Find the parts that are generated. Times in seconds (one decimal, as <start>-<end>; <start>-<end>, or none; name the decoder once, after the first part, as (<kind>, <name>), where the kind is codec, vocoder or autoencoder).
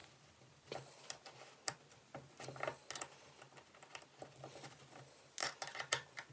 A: 0.0-2.3 (vocoder, BigVGAN v2); 3.9-5.0; 5.4-6.3